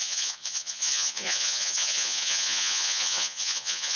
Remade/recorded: remade